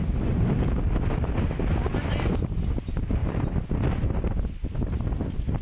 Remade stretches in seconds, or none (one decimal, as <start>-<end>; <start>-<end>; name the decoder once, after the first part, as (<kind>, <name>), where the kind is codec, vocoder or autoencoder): 0.0-3.2 (vocoder, BigVGAN v2); 4.8-5.6